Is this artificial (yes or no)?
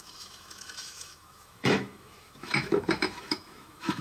yes